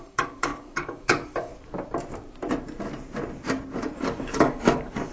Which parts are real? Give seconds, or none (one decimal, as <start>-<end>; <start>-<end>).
1.5-4.0